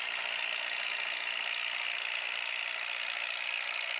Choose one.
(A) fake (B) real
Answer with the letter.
B